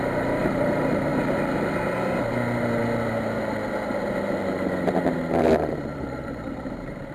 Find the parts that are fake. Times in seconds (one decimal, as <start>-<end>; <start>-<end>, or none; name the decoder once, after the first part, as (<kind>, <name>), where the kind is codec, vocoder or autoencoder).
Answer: 0.0-1.1 (vocoder, BigVGAN v2); 5.4-7.1